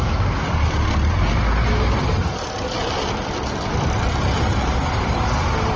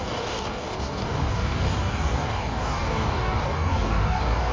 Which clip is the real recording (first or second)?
first